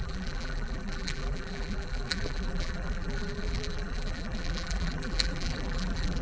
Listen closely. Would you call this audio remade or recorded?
remade